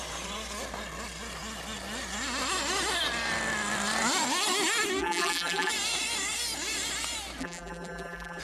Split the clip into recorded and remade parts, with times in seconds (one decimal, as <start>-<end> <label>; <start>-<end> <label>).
0.0-5.0 recorded; 5.0-5.7 remade; 5.7-7.4 recorded; 7.4-8.4 remade